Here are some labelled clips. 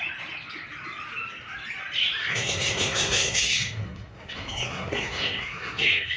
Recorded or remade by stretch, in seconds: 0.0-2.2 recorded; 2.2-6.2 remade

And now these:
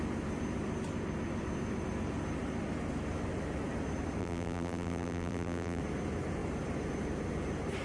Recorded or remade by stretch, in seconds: 0.0-4.2 recorded; 4.2-5.8 remade; 5.8-7.8 recorded

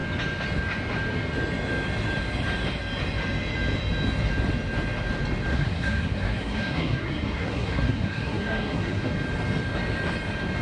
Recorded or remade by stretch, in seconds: 0.0-5.5 recorded; 5.5-9.1 remade; 9.1-10.6 recorded

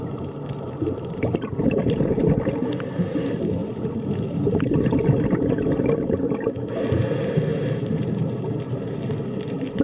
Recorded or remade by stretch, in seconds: 0.0-7.5 recorded; 7.5-8.3 remade; 8.3-9.8 recorded

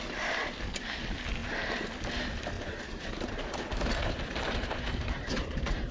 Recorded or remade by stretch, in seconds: 0.0-5.9 recorded

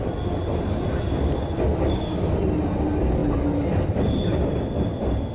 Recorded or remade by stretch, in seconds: 0.0-5.3 recorded